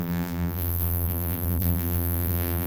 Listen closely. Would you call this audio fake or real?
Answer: fake